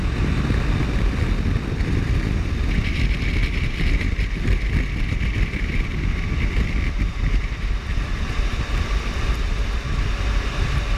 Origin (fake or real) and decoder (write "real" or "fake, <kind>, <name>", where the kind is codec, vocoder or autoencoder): fake, vocoder, BigVGAN v2